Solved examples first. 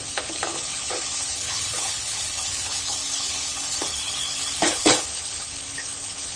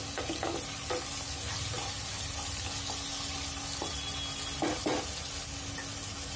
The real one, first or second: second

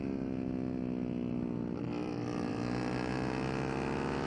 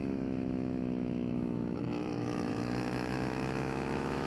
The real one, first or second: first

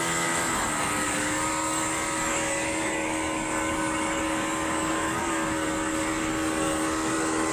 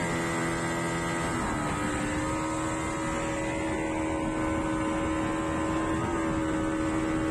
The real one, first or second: second